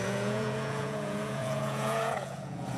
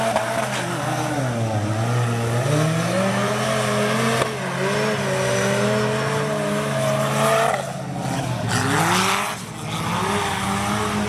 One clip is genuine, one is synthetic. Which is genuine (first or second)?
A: second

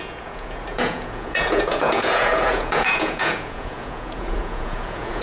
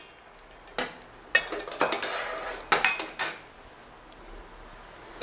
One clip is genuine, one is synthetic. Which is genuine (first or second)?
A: second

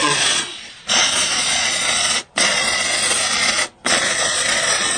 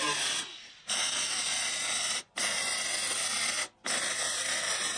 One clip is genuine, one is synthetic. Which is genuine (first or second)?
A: second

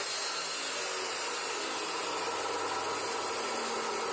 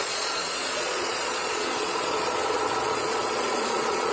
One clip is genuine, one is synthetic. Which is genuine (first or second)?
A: first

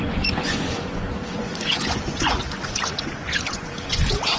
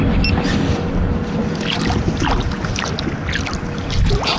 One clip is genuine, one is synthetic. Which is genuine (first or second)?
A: second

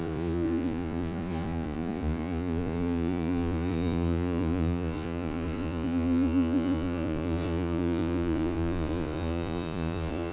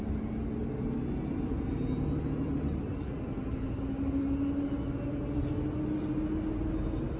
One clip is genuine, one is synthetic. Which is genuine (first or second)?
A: second